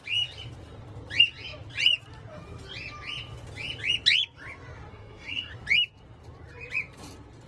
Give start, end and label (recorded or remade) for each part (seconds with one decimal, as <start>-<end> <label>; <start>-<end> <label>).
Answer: 0.0-4.9 recorded; 4.9-5.5 remade; 5.5-7.5 recorded